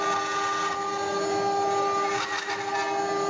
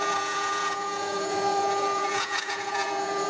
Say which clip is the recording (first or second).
first